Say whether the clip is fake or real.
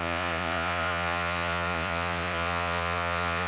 fake